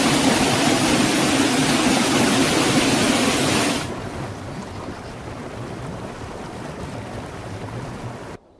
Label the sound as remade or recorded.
recorded